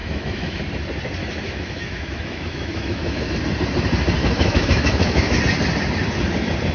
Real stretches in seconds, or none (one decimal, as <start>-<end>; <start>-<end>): 0.6-1.2; 3.3-4.2; 5.4-6.7